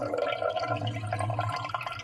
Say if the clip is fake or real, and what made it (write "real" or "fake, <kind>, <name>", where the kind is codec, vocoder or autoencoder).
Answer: fake, vocoder, BigVGAN v2